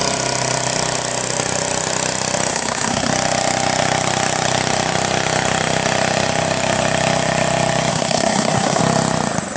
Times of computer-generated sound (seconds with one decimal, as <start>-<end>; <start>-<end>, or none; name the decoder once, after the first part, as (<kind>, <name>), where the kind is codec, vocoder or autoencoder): 2.5-3.1 (codec, SNAC); 7.9-8.8